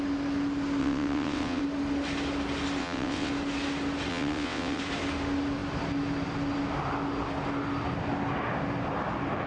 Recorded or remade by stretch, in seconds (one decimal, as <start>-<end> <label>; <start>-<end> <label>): 0.0-0.8 recorded; 0.8-1.6 remade; 1.6-2.8 recorded; 2.8-3.3 remade; 3.3-4.1 recorded; 4.1-4.8 remade; 4.8-9.5 recorded